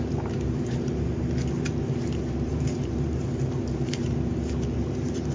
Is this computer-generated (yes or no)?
yes